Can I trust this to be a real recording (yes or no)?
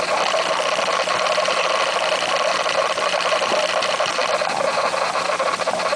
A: yes